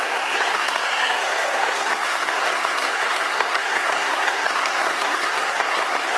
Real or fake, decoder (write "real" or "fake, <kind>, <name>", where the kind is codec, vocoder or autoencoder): fake, codec, SNAC